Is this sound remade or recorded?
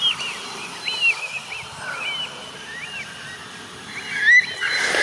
recorded